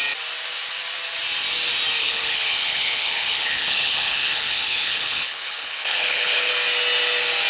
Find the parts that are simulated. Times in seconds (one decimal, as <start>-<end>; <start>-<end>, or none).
2.0-6.5